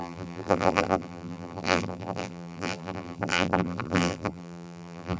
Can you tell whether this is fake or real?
fake